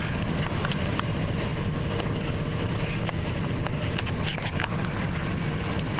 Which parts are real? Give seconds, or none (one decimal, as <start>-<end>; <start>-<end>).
0.0-6.0